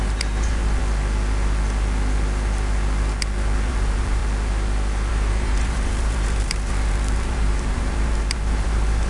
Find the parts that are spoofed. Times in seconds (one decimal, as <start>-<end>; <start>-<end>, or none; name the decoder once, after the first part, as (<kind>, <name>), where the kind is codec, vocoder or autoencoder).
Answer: 0.0-0.8 (vocoder, BigVGAN v2); 3.7-4.2; 5.1-9.1